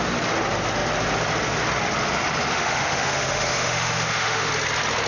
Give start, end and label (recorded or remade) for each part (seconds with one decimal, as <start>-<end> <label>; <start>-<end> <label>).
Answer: 0.0-2.5 recorded; 2.5-4.5 remade; 4.5-5.1 recorded